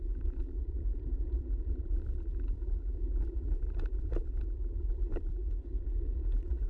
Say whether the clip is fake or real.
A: fake